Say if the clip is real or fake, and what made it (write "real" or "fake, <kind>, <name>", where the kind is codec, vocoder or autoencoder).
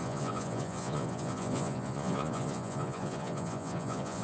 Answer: fake, vocoder, Vocos